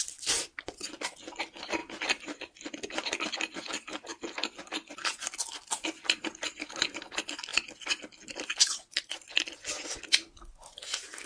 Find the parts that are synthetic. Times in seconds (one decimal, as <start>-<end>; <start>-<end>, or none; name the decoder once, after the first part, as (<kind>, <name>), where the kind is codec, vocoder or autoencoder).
none